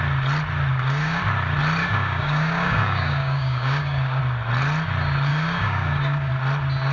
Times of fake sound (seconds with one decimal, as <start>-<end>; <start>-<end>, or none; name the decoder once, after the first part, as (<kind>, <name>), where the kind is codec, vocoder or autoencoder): 0.7-1.2 (codec, DAC); 1.8-4.2; 5.3-6.3